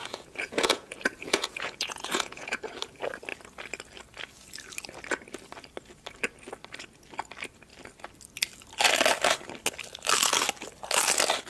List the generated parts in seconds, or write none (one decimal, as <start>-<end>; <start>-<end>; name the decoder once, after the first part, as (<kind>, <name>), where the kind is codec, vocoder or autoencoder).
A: 0.0-2.6 (vocoder, Vocos)